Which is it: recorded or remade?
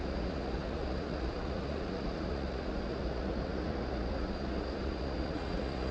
remade